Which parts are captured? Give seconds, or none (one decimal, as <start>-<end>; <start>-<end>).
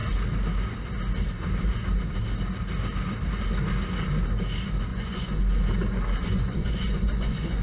0.0-4.9; 5.4-6.2